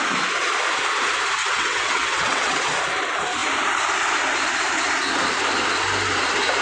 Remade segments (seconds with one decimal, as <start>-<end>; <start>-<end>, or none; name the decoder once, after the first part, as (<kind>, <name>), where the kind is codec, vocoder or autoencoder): 1.4-2.7 (vocoder, WaveNeXt)